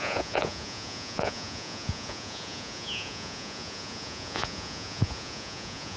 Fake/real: fake